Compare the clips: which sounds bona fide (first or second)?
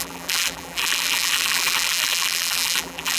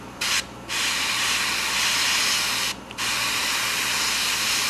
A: second